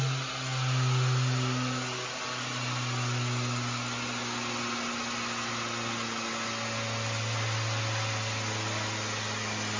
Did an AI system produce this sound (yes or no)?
no